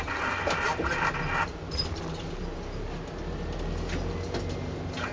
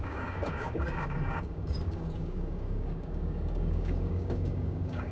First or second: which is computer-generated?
second